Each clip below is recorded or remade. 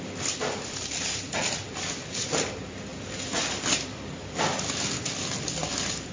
recorded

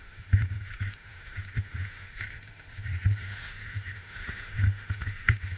remade